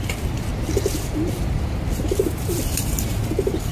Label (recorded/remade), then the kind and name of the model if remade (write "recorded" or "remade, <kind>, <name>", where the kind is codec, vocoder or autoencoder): recorded